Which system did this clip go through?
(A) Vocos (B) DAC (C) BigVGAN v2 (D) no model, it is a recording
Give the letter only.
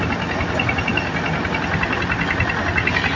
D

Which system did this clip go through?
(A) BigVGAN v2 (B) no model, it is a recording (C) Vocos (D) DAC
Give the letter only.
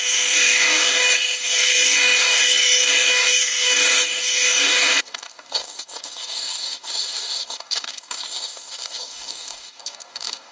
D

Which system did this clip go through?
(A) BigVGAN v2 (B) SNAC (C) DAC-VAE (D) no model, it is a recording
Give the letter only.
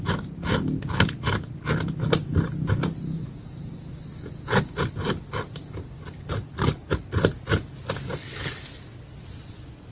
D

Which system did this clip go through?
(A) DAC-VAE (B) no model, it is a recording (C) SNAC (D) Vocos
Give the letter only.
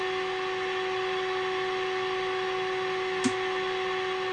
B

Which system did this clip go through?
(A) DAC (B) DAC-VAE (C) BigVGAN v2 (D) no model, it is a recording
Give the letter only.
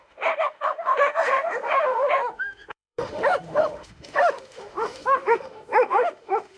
B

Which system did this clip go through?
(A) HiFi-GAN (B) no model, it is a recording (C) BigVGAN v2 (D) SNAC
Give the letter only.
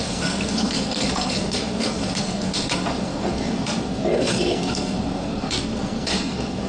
D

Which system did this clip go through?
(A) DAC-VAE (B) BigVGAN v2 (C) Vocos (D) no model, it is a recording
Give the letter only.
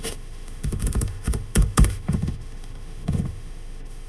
A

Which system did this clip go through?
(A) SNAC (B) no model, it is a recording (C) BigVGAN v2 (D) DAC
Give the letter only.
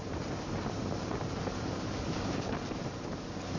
C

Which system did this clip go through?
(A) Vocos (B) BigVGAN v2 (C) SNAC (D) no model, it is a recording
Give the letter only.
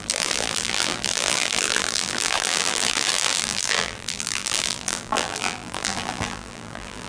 B